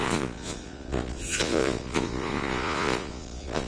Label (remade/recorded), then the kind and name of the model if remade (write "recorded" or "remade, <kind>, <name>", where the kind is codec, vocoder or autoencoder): remade, vocoder, Vocos